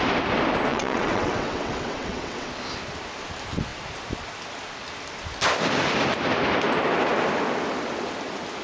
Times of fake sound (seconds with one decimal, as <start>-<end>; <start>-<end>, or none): 0.7-2.5